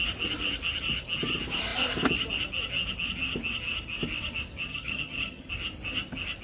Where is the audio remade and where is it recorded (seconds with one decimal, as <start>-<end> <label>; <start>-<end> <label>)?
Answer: 0.0-4.7 recorded; 4.7-5.5 remade; 5.5-6.4 recorded